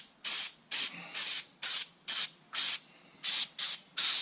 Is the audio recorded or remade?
recorded